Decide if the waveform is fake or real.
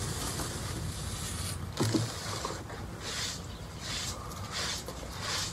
real